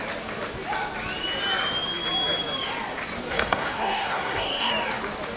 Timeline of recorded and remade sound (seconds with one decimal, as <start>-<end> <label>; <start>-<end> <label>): 0.0-3.3 recorded; 3.3-4.7 remade; 4.7-5.4 recorded